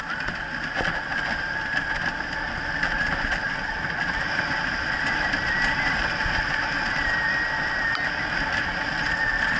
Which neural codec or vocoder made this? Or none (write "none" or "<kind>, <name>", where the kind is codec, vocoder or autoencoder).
none